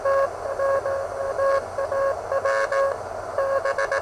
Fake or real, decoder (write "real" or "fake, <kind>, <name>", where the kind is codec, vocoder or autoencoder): real